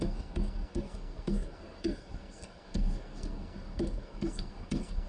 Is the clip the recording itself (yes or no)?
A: no